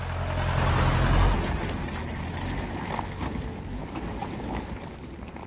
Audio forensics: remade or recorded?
recorded